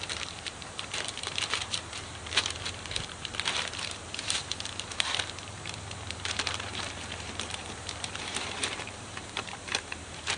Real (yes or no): no